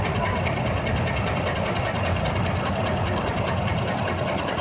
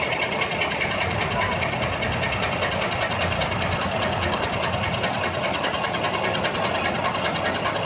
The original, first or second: second